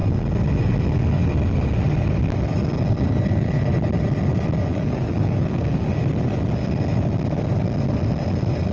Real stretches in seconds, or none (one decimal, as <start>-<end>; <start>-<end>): 0.0-4.7; 5.9-8.7